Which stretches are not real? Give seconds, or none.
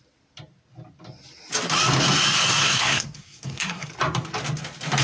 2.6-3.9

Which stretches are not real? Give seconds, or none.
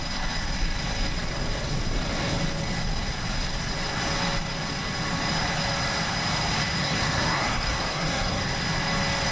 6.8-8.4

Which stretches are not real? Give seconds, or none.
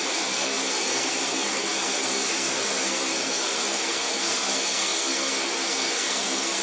0.0-6.6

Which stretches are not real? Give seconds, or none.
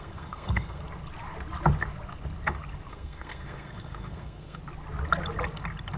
0.0-0.8; 2.9-4.6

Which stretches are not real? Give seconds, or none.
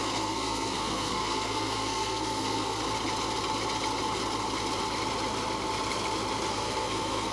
0.0-2.8; 6.5-7.3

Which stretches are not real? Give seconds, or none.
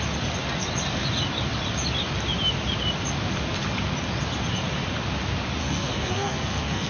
5.6-6.9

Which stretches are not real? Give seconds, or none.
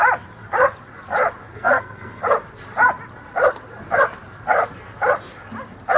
1.5-2.2